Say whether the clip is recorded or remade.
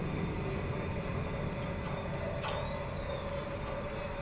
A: recorded